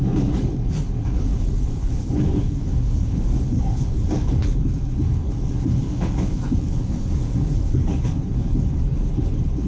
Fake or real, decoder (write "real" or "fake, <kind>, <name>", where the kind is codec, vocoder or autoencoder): fake, codec, HILCodec